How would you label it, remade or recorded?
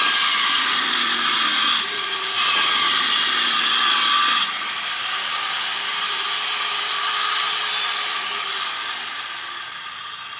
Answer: recorded